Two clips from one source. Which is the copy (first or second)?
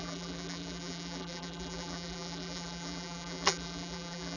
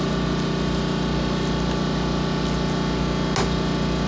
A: first